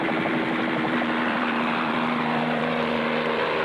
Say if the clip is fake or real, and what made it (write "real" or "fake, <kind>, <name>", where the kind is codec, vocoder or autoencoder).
fake, vocoder, BigVGAN v2